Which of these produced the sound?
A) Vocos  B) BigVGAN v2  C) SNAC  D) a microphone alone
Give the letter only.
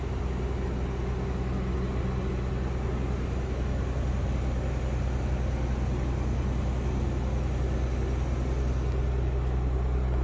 D